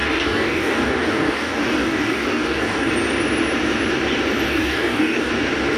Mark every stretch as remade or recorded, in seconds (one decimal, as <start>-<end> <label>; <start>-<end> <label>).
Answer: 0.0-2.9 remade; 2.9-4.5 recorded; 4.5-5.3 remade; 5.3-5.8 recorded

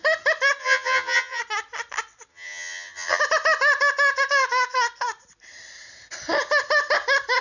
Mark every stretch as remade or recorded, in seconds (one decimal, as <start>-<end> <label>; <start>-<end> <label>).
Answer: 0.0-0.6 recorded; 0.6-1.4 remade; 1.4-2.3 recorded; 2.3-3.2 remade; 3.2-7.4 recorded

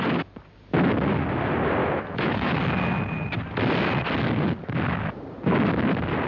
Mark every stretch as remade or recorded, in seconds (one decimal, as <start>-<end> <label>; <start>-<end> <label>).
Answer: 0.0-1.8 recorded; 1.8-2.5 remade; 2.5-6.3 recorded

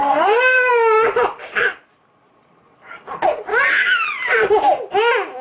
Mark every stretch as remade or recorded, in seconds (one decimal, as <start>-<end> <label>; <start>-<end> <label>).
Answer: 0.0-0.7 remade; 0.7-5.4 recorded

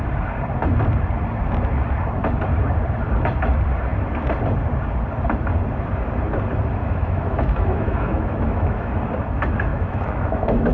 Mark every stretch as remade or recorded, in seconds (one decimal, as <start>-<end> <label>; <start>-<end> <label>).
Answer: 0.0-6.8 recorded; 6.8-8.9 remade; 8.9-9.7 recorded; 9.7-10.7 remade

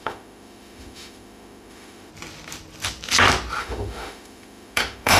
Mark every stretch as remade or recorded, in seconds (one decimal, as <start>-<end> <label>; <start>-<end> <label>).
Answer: 0.0-2.1 remade; 2.1-3.6 recorded; 3.6-5.2 remade